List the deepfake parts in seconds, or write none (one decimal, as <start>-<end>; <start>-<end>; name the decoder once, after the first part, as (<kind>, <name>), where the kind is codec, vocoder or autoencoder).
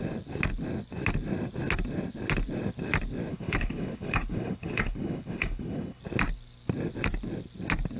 3.3-6.0 (codec, HILCodec)